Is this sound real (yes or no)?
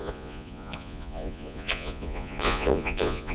no